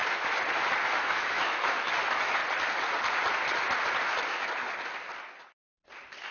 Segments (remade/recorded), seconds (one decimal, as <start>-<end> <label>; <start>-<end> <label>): 0.0-0.9 recorded; 0.9-2.4 remade; 2.4-6.3 recorded